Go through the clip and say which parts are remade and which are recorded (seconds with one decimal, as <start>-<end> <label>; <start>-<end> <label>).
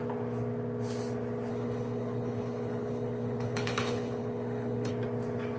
0.0-1.5 recorded; 1.5-4.9 remade; 4.9-5.6 recorded